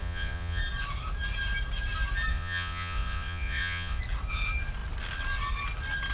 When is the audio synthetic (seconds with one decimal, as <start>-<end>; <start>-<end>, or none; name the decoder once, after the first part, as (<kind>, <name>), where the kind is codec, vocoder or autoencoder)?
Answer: 0.0-0.6 (vocoder, Vocos); 2.3-4.0